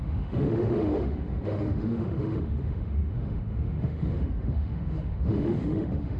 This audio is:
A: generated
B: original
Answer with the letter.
A